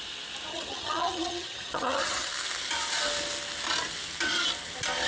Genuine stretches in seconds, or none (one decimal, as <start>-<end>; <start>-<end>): 0.0-0.5; 2.3-5.1